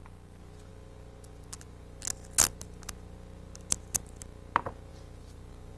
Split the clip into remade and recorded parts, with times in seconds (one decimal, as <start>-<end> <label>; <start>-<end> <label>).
0.0-4.9 recorded; 4.9-5.8 remade

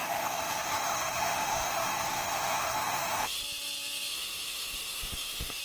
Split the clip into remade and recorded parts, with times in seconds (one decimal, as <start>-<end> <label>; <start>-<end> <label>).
0.0-3.4 remade; 3.4-4.1 recorded; 4.1-5.6 remade

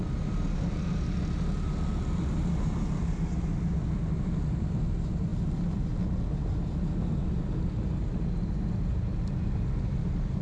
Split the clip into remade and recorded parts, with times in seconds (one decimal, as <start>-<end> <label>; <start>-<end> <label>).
0.0-10.4 recorded

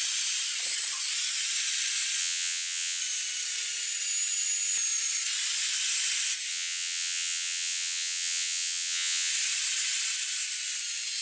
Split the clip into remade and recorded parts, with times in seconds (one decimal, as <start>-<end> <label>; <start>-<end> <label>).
0.0-2.2 recorded; 2.2-3.0 remade; 3.0-6.5 recorded; 6.5-9.3 remade; 9.3-11.2 recorded

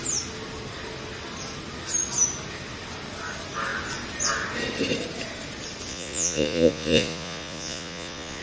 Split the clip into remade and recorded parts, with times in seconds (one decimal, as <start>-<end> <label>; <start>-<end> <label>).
0.0-5.9 recorded; 5.9-8.4 remade